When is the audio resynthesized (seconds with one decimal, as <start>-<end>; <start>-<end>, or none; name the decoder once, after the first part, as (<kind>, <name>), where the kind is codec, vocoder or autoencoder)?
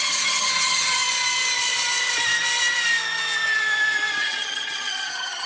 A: 0.0-1.0 (vocoder, HiFi-GAN); 4.2-5.5